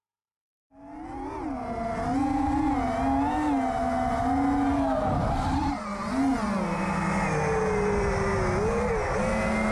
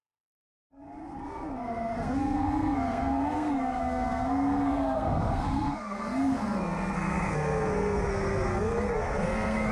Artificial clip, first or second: second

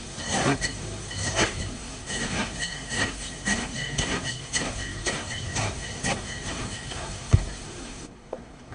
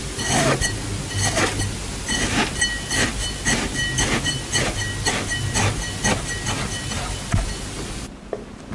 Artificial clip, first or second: first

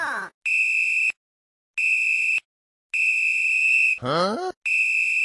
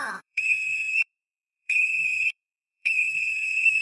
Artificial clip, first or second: second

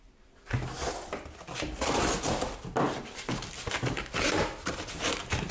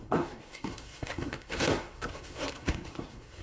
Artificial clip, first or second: second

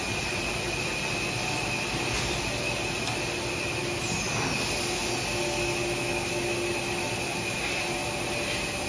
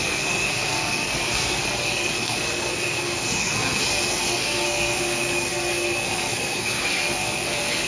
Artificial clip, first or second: second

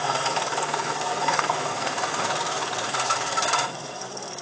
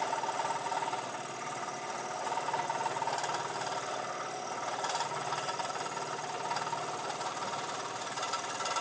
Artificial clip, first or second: first